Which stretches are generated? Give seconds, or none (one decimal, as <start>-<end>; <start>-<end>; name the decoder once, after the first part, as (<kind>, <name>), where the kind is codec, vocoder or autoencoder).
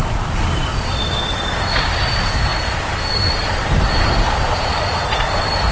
none